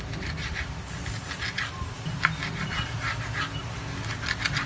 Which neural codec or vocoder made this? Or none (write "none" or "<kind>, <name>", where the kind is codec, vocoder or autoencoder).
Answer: none